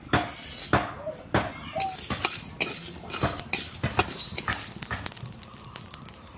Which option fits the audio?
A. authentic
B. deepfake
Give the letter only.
A